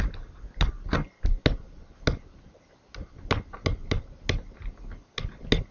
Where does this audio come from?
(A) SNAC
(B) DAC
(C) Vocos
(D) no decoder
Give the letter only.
D